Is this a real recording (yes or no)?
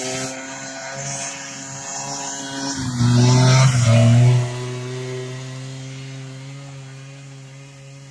yes